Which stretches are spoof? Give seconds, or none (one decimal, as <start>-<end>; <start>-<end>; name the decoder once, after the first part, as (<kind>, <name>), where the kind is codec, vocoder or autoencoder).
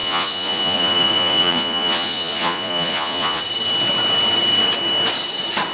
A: 0.0-3.4 (vocoder, Vocos)